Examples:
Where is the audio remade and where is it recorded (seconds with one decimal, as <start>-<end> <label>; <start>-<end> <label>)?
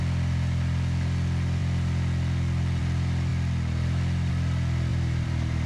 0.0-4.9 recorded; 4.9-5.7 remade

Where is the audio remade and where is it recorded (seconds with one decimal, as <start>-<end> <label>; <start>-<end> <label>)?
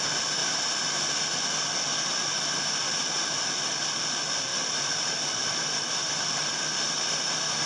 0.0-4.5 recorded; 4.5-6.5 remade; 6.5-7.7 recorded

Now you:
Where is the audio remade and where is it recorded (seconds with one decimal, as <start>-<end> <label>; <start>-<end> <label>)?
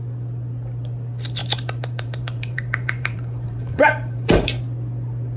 0.0-1.4 recorded; 1.4-4.6 remade; 4.6-5.4 recorded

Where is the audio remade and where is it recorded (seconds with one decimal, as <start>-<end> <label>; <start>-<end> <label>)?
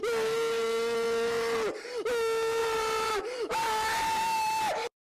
0.0-2.6 recorded; 2.6-3.2 remade; 3.2-5.1 recorded